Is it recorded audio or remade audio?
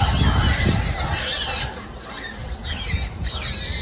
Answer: recorded